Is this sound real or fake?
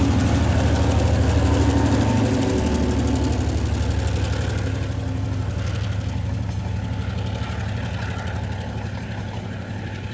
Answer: real